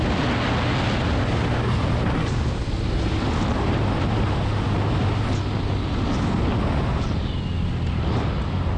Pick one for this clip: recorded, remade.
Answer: recorded